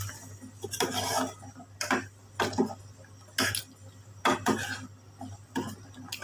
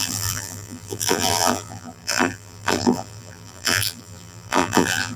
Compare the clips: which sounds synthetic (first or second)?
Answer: second